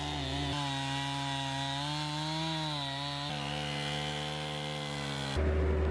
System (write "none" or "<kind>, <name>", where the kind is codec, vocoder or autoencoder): none